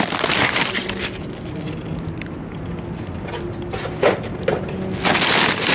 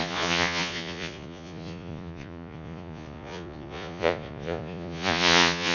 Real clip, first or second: first